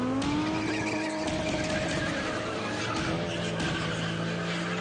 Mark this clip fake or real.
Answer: real